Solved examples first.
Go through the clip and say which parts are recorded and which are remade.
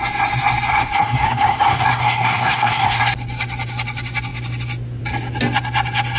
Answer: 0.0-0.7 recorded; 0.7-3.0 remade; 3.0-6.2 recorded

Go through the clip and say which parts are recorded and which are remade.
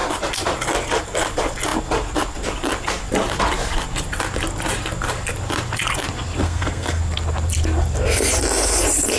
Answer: 0.0-6.4 recorded; 6.4-7.0 remade; 7.0-9.2 recorded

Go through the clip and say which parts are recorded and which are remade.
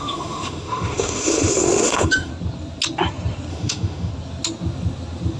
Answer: 0.0-2.3 remade; 2.3-3.5 recorded; 3.5-4.1 remade; 4.1-5.4 recorded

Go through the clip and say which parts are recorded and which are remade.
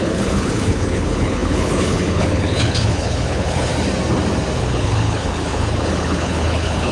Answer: 0.0-3.7 remade; 3.7-4.6 recorded; 4.6-6.9 remade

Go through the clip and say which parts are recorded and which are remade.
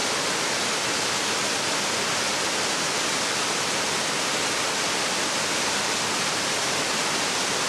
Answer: 0.0-7.7 recorded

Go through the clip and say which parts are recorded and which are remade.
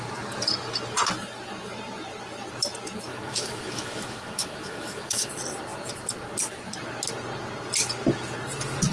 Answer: 0.0-3.1 recorded; 3.1-5.3 remade; 5.3-8.9 recorded